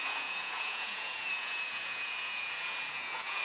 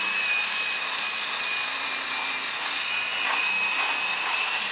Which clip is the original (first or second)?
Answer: second